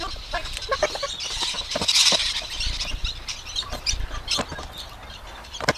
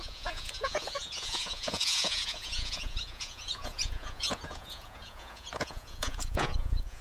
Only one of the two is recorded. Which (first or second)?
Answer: first